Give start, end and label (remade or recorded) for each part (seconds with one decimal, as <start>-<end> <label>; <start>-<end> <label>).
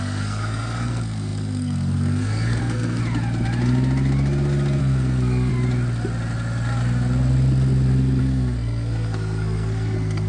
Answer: 0.0-3.0 remade; 3.0-4.8 recorded; 4.8-5.5 remade; 5.5-8.2 recorded; 8.2-10.3 remade